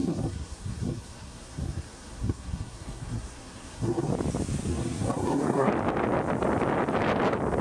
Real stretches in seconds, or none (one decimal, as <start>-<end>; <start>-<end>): 4.1-4.7; 5.7-7.6